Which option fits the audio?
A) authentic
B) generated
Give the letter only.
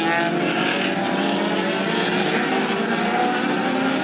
A